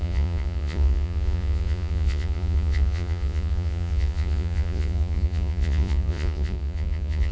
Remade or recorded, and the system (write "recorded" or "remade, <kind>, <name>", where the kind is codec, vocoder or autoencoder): remade, vocoder, Vocos